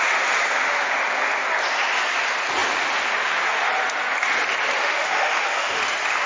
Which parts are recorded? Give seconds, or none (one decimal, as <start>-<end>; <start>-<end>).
0.0-4.8; 5.8-6.3